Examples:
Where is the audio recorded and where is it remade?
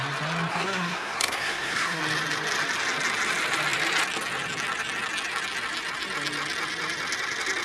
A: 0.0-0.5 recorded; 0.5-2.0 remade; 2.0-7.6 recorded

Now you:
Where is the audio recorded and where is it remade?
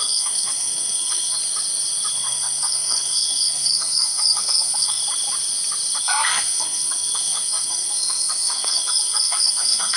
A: 0.0-1.4 remade; 1.4-2.1 recorded; 2.1-5.0 remade; 5.0-6.0 recorded; 6.0-10.0 remade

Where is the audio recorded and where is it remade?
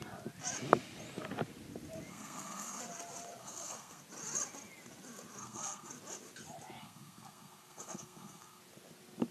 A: 0.0-2.1 recorded; 2.1-2.8 remade; 2.8-3.4 recorded; 3.4-4.0 remade; 4.0-5.4 recorded; 5.4-5.9 remade; 5.9-6.8 recorded; 6.8-8.6 remade; 8.6-9.3 recorded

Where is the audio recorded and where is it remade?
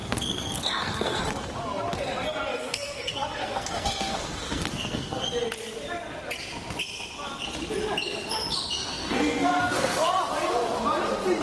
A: 0.0-1.2 remade; 1.2-2.5 recorded; 2.5-5.2 remade; 5.2-8.9 recorded; 8.9-10.2 remade; 10.2-11.4 recorded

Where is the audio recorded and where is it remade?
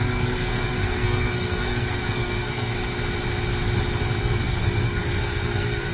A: 0.0-2.7 remade; 2.7-4.2 recorded; 4.2-5.9 remade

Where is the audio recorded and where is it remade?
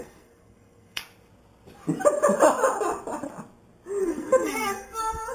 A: 0.0-1.0 remade; 1.0-4.0 recorded; 4.0-5.3 remade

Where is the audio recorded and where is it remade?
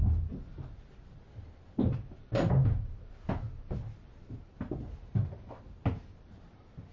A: 0.0-6.9 recorded